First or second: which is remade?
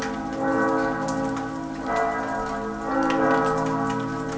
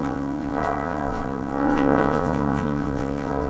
second